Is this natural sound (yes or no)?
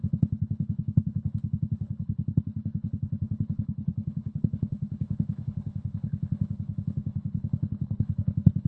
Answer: no